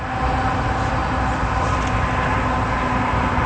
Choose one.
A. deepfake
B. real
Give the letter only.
B